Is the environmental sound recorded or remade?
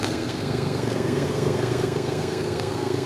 remade